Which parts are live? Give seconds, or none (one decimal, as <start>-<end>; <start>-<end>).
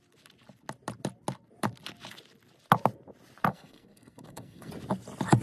0.0-3.5; 4.7-5.4